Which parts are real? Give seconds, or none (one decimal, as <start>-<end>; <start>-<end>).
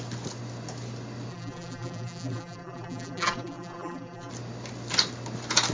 0.0-1.3; 4.3-5.7